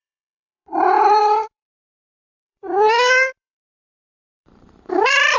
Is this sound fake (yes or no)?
yes